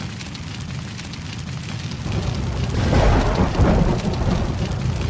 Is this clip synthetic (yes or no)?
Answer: no